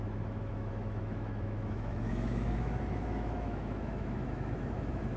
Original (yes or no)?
no